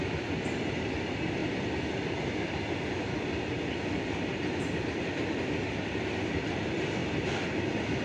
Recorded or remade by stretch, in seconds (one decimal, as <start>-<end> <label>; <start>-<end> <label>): 0.0-7.0 recorded; 7.0-7.6 remade; 7.6-8.0 recorded